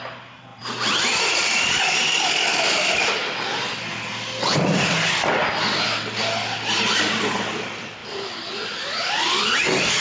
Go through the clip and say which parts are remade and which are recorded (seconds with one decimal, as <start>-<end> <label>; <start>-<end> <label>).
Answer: 0.0-0.5 recorded; 0.5-1.2 remade; 1.2-8.0 recorded; 8.0-9.1 remade; 9.1-10.0 recorded